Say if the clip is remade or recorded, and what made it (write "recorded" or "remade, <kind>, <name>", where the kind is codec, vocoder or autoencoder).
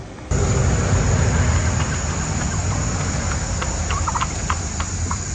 recorded